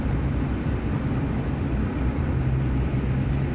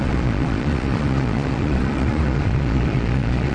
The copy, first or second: second